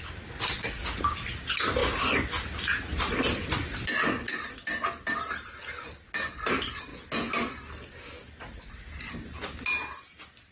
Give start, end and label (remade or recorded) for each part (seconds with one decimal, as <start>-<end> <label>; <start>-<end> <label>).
0.0-10.5 recorded